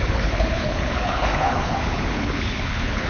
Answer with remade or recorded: remade